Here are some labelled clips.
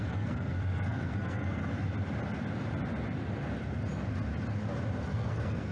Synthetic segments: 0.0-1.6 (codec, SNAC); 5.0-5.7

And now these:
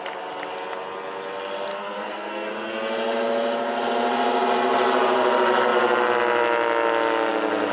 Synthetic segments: 1.7-2.5 (codec, SNAC)